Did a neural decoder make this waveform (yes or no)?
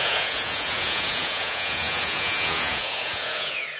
yes